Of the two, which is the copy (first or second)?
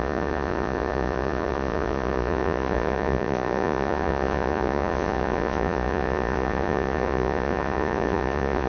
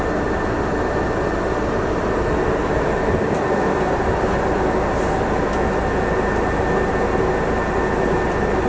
first